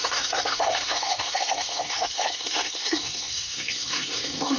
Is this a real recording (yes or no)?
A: no